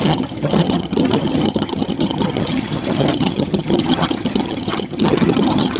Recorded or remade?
remade